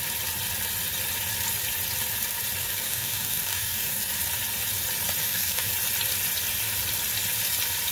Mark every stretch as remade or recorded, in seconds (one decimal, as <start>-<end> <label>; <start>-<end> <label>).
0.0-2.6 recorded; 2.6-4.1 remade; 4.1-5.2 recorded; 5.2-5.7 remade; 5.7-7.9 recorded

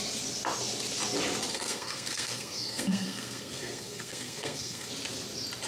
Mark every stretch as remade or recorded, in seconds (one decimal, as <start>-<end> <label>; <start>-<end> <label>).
0.0-1.5 recorded; 1.5-4.9 remade; 4.9-5.7 recorded

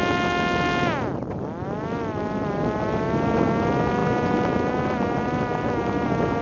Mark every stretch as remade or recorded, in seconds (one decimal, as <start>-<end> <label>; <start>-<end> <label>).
0.0-6.4 recorded

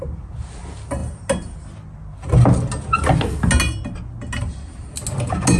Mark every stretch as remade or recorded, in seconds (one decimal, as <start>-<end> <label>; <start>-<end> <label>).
0.0-5.6 recorded